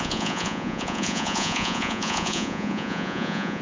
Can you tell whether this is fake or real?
fake